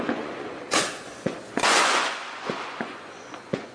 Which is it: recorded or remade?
remade